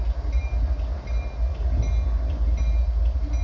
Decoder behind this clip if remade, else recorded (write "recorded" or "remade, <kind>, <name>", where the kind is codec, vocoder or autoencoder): recorded